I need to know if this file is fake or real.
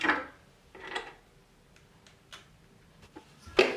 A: real